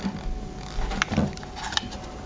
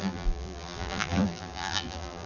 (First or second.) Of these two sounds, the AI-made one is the second